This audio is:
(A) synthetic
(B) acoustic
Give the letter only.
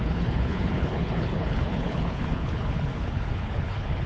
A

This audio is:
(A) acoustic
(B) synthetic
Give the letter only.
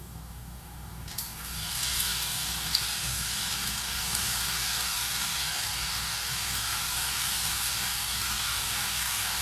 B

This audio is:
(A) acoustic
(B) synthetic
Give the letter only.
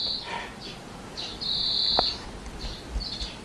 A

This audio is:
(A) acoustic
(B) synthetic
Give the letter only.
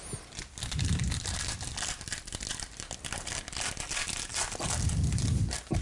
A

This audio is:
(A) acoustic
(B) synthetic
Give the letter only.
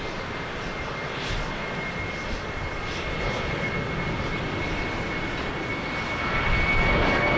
A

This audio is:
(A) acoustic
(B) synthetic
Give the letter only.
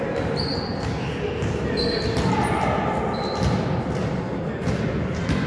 A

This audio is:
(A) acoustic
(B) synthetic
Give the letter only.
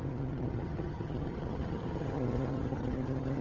B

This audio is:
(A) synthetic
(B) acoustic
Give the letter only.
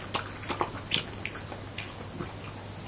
B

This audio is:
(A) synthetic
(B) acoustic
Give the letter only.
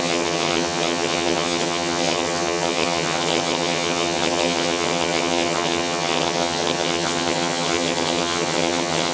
A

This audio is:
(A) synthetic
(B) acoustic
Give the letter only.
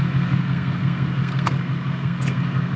A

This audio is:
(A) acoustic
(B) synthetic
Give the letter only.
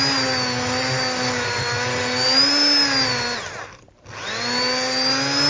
A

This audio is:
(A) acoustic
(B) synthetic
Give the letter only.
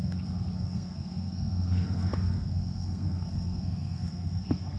B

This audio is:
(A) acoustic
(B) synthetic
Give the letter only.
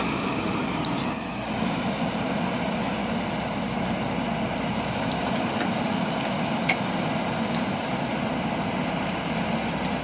A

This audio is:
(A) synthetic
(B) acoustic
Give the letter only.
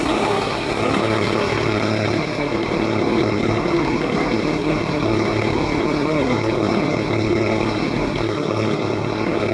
A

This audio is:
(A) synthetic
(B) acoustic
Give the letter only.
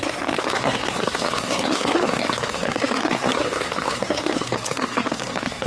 A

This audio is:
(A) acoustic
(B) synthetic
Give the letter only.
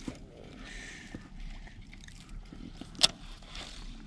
A